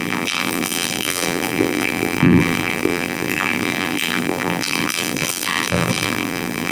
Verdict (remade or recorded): remade